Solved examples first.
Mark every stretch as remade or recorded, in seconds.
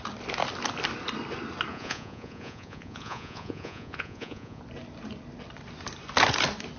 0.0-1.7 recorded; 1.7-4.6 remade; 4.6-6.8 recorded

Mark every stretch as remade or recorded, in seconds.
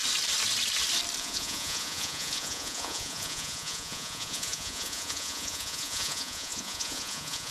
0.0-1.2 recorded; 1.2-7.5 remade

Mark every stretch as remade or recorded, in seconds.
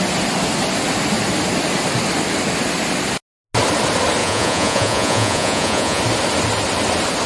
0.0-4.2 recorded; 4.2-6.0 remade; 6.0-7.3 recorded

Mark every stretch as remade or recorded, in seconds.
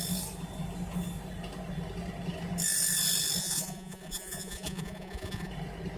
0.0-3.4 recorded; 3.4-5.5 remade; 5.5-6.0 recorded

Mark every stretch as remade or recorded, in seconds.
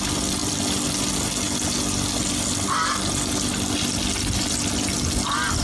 0.0-5.6 recorded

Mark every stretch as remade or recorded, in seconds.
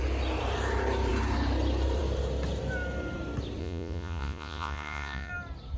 0.0-3.6 recorded; 3.6-5.3 remade; 5.3-5.8 recorded